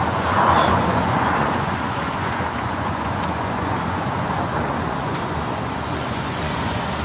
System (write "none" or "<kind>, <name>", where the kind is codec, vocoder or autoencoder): vocoder, Vocos